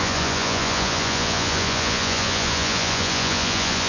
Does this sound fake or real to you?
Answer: fake